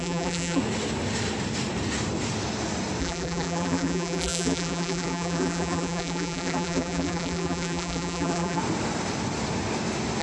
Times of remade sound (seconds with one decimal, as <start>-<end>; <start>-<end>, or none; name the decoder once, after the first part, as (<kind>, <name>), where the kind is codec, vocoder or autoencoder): 0.0-0.6 (vocoder, BigVGAN v2); 3.0-8.6